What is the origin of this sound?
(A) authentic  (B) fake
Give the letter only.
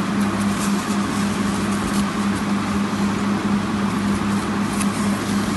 A